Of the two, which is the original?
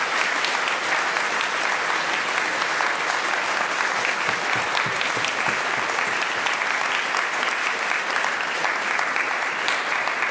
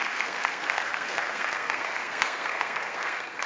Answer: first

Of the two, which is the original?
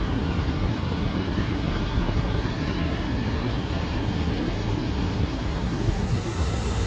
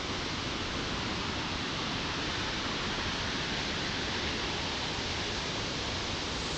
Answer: second